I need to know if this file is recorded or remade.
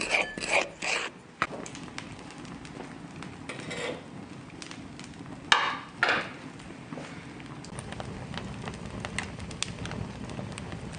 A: recorded